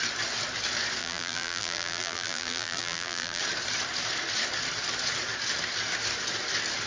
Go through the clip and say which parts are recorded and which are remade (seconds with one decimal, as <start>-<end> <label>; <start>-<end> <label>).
0.0-1.0 recorded; 1.0-3.4 remade; 3.4-6.9 recorded

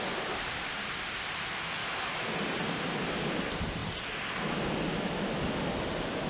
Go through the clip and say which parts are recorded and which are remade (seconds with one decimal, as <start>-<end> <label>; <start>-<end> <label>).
0.0-1.8 recorded; 1.8-2.3 remade; 2.3-6.3 recorded